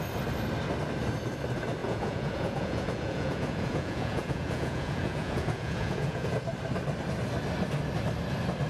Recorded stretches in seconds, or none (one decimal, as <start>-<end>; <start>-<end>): 0.0-1.8; 6.4-8.7